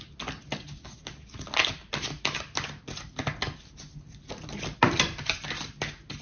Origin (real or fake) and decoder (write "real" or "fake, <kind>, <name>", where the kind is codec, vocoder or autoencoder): real